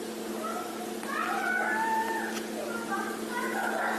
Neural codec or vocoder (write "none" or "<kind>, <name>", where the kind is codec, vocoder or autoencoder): none